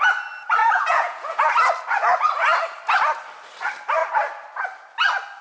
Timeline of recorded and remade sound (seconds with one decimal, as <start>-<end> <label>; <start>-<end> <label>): 0.0-0.6 recorded; 0.6-1.5 remade; 1.5-5.4 recorded